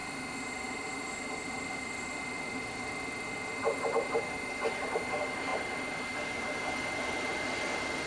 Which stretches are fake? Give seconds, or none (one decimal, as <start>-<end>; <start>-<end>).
none